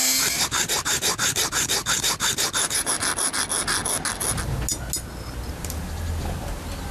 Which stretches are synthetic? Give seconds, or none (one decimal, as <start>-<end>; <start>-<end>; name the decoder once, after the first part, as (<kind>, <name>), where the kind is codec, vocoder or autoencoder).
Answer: 0.0-2.9 (vocoder, BigVGAN v2)